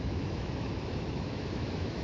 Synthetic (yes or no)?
yes